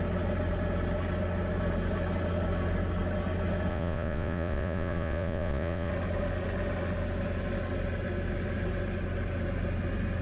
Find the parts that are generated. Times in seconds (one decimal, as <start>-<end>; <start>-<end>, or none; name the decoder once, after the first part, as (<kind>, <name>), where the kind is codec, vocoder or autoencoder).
3.7-5.9 (vocoder, Vocos)